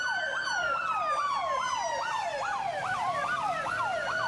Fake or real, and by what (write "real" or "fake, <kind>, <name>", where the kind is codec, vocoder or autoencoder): fake, vocoder, BigVGAN v2